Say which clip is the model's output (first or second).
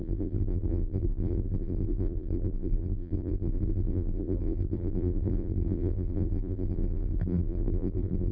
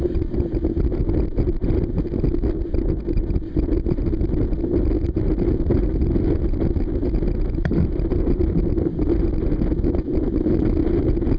first